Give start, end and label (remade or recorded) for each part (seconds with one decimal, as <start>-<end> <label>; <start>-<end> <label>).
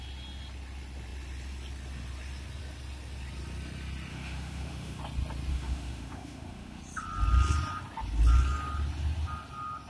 0.0-4.1 recorded; 4.1-5.0 remade; 5.0-5.5 recorded; 5.5-6.8 remade; 6.8-9.9 recorded